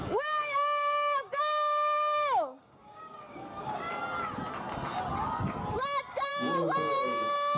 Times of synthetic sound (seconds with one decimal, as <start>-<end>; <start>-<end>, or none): 0.0-3.9